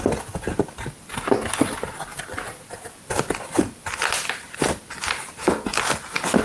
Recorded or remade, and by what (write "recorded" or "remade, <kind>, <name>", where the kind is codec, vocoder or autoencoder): recorded